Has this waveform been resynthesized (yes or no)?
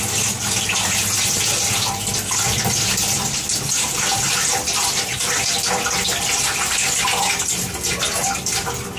no